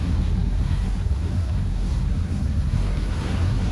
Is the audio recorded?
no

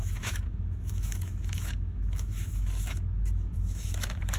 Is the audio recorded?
no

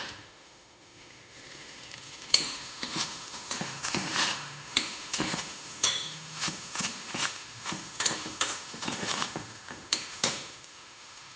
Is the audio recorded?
no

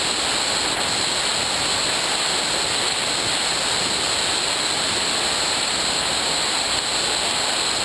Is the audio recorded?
yes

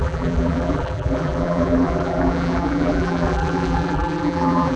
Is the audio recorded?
no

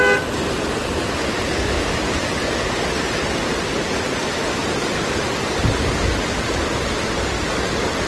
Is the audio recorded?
yes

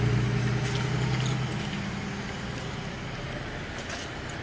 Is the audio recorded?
yes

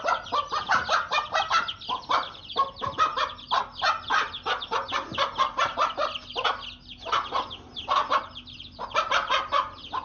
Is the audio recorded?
yes